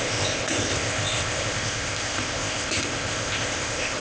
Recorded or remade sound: remade